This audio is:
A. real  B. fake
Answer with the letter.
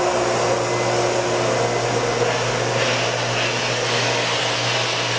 A